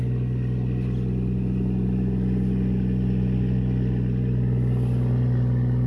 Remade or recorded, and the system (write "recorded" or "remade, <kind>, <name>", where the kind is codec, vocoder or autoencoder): recorded